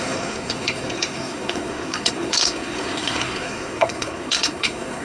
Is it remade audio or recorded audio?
remade